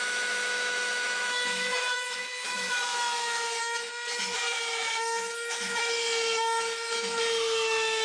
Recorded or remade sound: remade